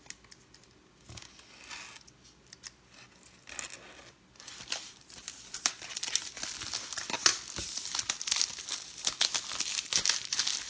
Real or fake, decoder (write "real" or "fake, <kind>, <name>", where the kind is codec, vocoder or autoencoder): real